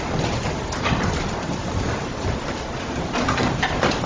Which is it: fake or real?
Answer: real